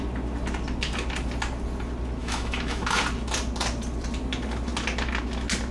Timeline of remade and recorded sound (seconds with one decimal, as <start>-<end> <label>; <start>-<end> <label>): 0.0-2.2 recorded; 2.2-3.0 remade; 3.0-5.7 recorded